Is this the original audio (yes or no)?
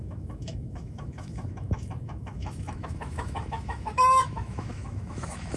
no